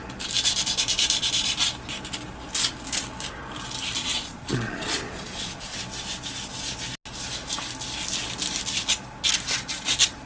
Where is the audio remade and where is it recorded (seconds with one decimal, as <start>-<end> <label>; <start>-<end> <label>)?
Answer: 0.0-4.0 recorded; 4.0-5.8 remade; 5.8-10.3 recorded